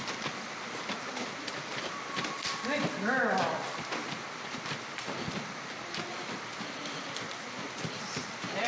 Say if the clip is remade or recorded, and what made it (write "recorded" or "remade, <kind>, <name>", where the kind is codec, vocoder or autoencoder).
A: recorded